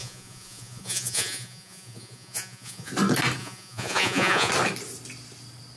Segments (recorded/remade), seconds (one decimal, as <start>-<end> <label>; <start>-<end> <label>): 0.0-2.9 remade; 2.9-3.4 recorded; 3.4-4.5 remade; 4.5-5.8 recorded